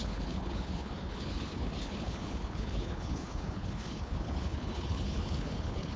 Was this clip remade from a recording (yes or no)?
yes